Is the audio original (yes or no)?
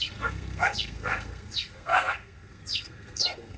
no